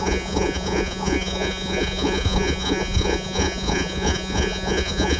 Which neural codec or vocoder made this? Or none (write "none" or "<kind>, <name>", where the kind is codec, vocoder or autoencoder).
vocoder, Vocos